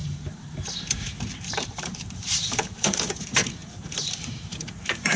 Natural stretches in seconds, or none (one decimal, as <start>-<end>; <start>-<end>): none